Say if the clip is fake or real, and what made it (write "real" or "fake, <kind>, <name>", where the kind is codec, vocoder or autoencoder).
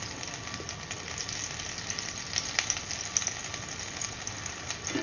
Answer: real